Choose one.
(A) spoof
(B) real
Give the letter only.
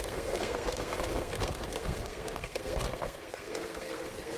A